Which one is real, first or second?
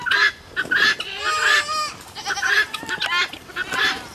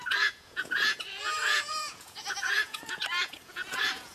first